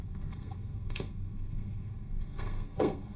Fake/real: fake